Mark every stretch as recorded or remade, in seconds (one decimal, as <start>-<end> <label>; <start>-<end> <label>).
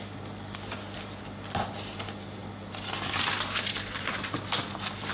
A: 0.0-5.1 recorded